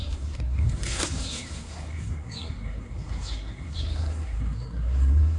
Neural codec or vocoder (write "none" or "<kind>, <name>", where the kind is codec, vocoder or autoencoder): codec, SNAC